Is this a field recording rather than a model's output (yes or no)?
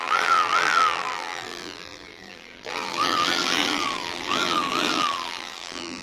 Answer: no